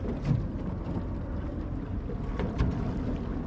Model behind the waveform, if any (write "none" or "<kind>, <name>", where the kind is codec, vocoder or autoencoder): none